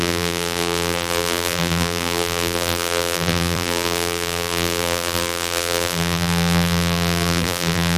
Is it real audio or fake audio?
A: fake